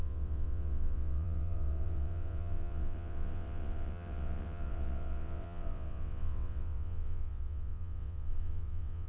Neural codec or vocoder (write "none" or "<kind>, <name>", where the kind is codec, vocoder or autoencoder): vocoder, WaveNeXt